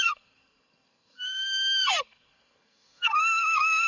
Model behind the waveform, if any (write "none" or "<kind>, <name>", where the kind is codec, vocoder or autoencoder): codec, SNAC